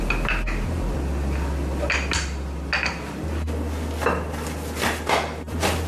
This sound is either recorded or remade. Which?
recorded